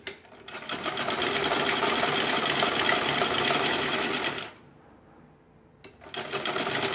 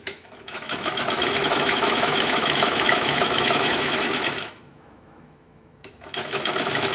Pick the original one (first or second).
first